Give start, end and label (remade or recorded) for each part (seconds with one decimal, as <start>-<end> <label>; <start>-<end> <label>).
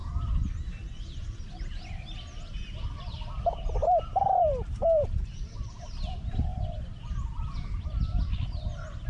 0.0-3.8 recorded; 3.8-5.8 remade; 5.8-6.5 recorded; 6.5-7.1 remade; 7.1-9.1 recorded